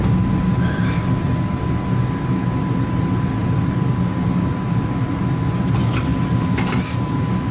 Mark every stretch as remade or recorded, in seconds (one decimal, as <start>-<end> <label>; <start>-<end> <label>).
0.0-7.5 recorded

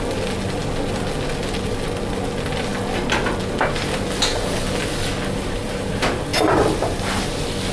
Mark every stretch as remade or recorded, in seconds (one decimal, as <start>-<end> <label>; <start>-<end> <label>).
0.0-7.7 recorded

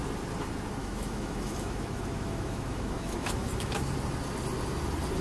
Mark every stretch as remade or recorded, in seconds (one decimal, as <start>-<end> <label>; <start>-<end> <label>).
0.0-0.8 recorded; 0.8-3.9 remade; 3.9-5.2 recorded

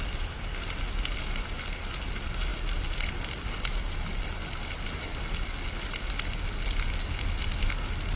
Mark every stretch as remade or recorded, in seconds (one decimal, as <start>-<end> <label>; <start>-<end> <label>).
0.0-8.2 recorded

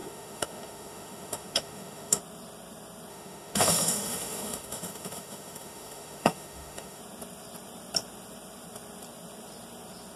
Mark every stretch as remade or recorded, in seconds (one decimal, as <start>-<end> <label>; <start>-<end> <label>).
0.0-2.2 remade; 2.2-3.1 recorded; 3.1-7.0 remade; 7.0-10.2 recorded

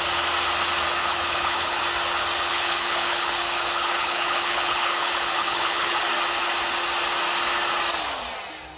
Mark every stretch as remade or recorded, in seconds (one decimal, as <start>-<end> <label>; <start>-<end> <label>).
0.0-1.0 recorded; 1.0-1.8 remade; 1.8-2.5 recorded; 2.5-6.0 remade; 6.0-8.8 recorded

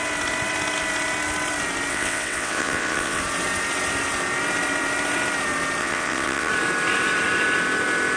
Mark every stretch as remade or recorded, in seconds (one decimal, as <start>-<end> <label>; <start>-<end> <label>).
0.0-1.9 recorded; 1.9-3.2 remade; 3.2-5.8 recorded; 5.8-6.5 remade; 6.5-8.2 recorded